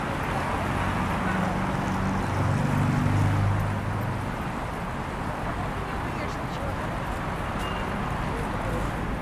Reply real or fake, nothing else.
real